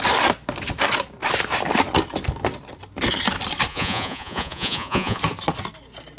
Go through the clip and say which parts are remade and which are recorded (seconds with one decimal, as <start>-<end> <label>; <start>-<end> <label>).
0.0-3.7 recorded; 3.7-5.2 remade; 5.2-6.2 recorded